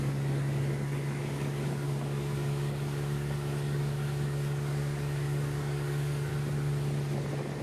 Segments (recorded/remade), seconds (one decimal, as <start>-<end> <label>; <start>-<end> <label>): 0.0-6.3 remade; 6.3-7.6 recorded